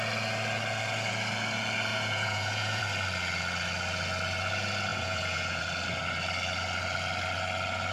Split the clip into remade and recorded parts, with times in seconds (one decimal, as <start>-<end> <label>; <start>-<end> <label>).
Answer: 0.0-1.9 recorded; 1.9-2.8 remade; 2.8-4.9 recorded; 4.9-5.6 remade; 5.6-7.9 recorded